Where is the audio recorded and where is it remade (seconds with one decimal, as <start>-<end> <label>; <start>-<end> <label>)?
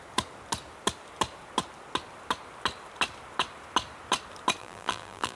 0.0-4.6 recorded; 4.6-5.4 remade